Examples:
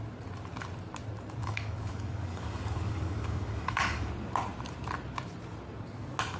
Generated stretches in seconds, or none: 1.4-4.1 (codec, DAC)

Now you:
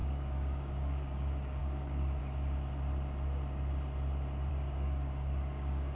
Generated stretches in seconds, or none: 0.0-2.2 (codec, DAC); 4.5-5.9

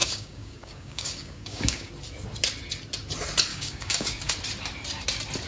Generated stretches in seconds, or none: 0.0-1.9 (codec, DAC); 3.5-4.3

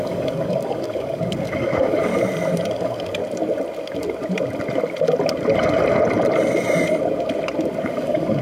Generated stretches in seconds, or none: 0.0-2.1 (codec, DAC); 2.7-3.2; 7.9-8.4

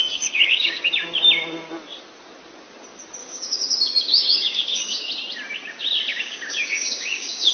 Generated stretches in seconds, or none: 0.0-0.9 (codec, DAC); 3.2-5.1; 6.1-7.5

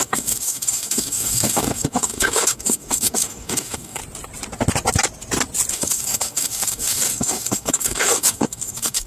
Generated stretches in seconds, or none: 0.0-4.0 (codec, DAC); 5.7-9.1